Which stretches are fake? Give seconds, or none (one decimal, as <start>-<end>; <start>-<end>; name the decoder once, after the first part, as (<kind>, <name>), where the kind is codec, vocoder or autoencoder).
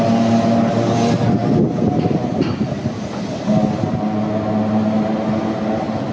none